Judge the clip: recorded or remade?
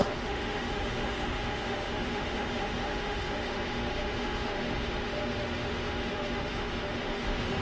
remade